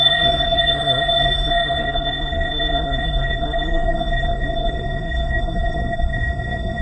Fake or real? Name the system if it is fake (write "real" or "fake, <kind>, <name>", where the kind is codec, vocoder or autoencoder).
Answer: fake, codec, SNAC